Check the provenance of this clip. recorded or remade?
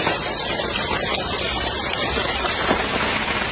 remade